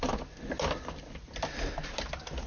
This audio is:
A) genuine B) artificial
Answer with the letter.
A